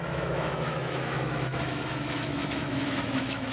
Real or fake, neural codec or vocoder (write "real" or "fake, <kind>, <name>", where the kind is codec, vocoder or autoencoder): fake, autoencoder, DAC-VAE